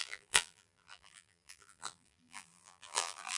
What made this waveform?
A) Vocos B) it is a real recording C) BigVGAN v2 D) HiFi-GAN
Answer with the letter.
C